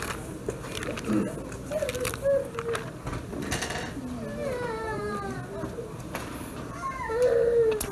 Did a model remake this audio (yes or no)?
no